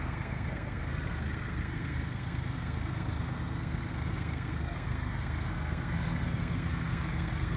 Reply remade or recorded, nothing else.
remade